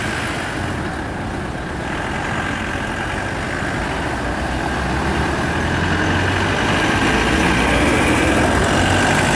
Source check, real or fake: real